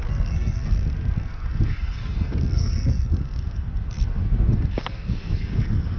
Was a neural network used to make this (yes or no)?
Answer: yes